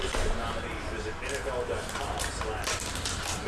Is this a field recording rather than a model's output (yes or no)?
yes